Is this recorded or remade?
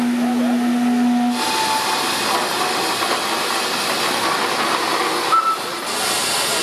recorded